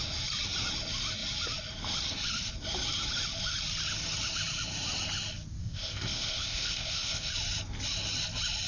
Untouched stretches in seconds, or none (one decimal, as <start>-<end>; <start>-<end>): 0.0-5.6; 7.3-8.7